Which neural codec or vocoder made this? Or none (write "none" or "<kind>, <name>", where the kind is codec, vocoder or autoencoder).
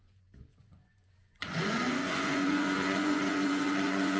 vocoder, Vocos